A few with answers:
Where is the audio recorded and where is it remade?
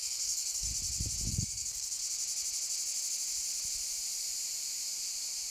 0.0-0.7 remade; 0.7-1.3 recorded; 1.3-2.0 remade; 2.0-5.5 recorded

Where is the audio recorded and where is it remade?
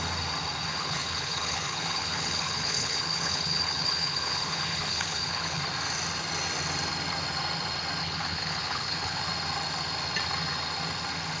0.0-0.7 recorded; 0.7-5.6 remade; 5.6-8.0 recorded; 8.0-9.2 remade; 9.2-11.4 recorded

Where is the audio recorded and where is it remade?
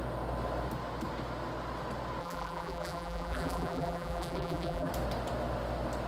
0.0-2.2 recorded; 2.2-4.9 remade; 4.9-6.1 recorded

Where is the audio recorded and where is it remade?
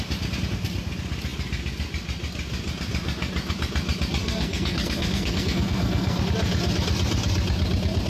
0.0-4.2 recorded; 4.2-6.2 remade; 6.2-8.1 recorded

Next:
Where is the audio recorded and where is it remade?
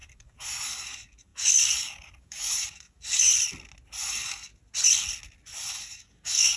0.0-3.3 remade; 3.3-4.0 recorded; 4.0-4.5 remade; 4.5-5.8 recorded; 5.8-6.6 remade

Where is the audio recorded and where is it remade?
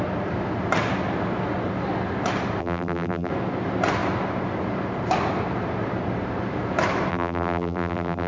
0.0-2.6 recorded; 2.6-3.3 remade; 3.3-7.1 recorded; 7.1-8.3 remade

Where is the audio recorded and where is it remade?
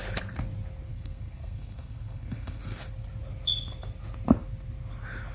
0.0-0.9 recorded; 0.9-2.6 remade; 2.6-5.3 recorded